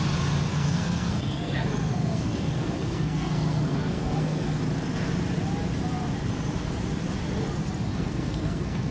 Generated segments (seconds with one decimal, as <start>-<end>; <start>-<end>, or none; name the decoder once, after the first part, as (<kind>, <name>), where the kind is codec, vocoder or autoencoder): 0.5-4.6 (codec, SNAC); 7.9-8.9